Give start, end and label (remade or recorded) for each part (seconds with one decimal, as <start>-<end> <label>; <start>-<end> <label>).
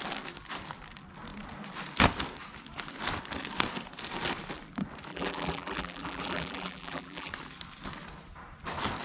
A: 0.0-5.1 recorded; 5.1-7.3 remade; 7.3-9.0 recorded